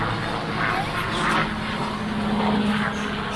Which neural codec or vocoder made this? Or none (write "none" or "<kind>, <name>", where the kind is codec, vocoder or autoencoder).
none